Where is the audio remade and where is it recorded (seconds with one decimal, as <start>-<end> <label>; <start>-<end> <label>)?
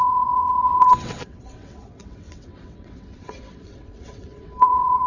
0.0-5.1 remade